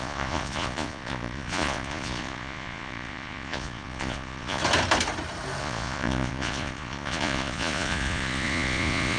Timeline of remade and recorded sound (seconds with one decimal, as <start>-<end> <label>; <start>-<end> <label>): 0.0-4.6 remade; 4.6-5.6 recorded; 5.6-9.2 remade